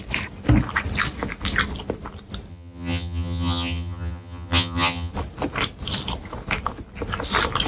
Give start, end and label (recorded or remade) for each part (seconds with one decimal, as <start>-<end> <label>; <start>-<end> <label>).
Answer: 0.0-2.5 recorded; 2.5-5.1 remade; 5.1-7.7 recorded